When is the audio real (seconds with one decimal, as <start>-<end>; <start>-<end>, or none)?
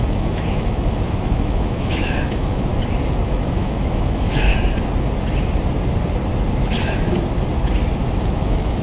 2.7-3.3; 4.5-8.2